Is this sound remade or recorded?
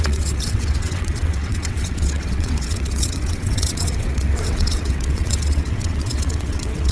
remade